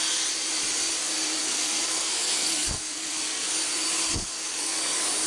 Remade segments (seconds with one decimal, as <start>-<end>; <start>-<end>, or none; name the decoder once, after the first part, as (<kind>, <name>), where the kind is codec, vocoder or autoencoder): 1.4-3.5 (codec, SNAC); 4.1-4.8